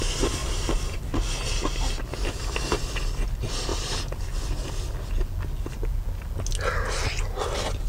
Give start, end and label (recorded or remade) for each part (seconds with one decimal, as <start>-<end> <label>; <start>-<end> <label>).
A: 0.0-0.4 recorded; 0.4-1.0 remade; 1.0-7.9 recorded